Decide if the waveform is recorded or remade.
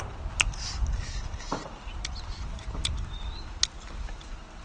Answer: recorded